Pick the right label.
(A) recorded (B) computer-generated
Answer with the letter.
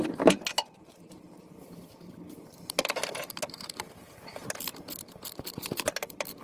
B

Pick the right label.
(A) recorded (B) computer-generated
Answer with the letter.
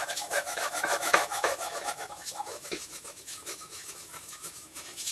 B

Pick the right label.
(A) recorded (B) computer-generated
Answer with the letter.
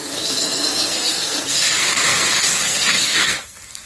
B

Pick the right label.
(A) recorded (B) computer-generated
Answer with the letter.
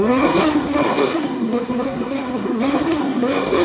B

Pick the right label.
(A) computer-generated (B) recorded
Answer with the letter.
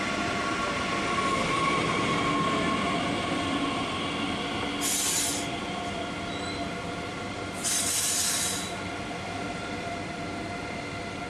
B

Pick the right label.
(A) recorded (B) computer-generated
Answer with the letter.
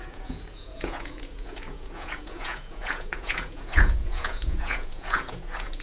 B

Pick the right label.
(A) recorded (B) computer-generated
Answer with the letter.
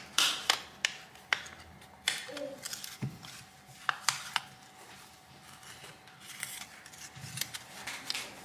A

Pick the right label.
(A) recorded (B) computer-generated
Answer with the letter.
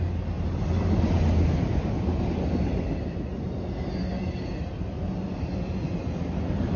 A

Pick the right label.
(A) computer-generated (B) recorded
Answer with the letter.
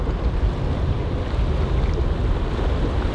B